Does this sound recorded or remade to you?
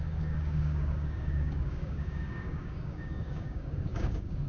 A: remade